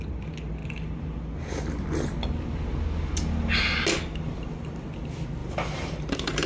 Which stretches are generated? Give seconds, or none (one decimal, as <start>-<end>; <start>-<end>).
5.4-6.5